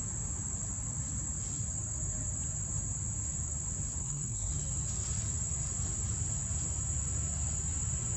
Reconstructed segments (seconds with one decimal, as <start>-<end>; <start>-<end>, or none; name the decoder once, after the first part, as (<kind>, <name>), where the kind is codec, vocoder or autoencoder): 4.0-4.5 (codec, SNAC)

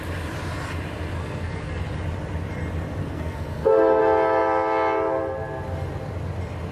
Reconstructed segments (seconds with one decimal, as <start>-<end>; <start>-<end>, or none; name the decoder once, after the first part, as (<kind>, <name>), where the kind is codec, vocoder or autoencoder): 1.2-1.9 (codec, SNAC); 3.0-4.0

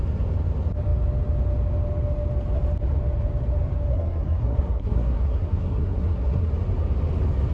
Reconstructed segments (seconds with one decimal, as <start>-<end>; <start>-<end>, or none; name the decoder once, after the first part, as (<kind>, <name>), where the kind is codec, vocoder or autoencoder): 3.9-6.5 (codec, SNAC)

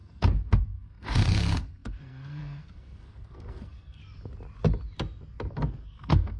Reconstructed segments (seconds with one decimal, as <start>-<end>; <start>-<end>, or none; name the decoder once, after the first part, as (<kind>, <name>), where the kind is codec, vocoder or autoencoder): 0.0-4.0 (codec, SNAC); 5.5-6.4

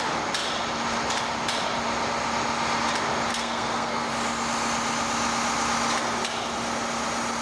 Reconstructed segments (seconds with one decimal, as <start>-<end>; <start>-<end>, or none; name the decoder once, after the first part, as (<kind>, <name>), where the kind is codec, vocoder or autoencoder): 3.3-4.1 (codec, SNAC)

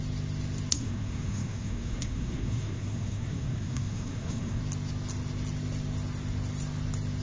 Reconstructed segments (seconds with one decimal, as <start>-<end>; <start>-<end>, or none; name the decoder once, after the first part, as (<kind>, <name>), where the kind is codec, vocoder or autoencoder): 0.7-4.6 (codec, SNAC)

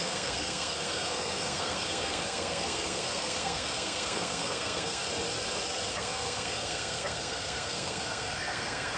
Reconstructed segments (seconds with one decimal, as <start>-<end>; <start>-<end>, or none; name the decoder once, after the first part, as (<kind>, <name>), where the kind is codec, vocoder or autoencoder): 0.0-5.0 (codec, SNAC); 5.9-9.0